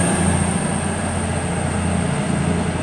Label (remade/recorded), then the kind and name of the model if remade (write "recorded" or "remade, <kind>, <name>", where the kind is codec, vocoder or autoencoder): recorded